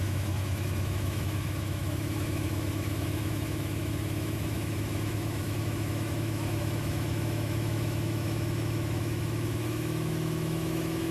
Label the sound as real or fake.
fake